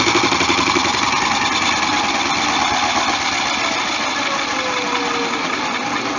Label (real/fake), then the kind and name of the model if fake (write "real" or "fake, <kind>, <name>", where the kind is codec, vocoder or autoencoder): real